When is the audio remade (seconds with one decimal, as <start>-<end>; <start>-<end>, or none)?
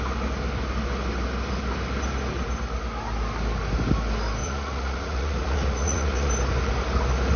4.4-6.3